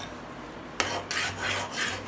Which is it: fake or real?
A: real